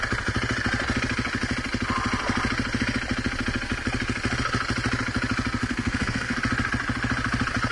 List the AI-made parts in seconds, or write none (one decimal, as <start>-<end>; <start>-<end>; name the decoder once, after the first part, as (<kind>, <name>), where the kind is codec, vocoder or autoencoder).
5.6-6.4 (codec, SNAC)